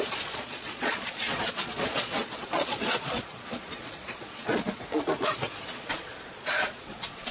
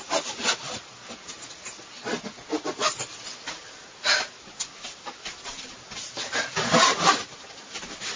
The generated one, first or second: first